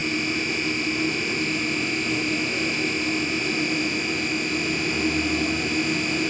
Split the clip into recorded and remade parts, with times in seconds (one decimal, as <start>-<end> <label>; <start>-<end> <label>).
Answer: 0.0-6.3 recorded